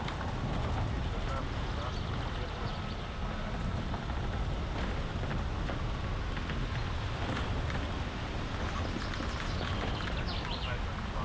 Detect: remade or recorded recorded